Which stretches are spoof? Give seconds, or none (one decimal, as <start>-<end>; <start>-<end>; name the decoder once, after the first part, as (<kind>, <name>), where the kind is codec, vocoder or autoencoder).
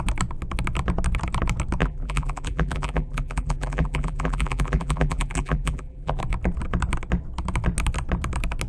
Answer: 1.8-6.2 (vocoder, BigVGAN v2)